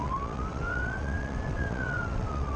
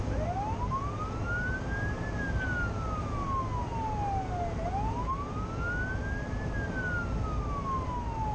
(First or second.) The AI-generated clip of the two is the first